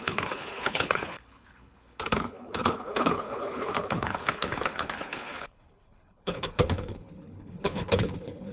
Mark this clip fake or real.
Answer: fake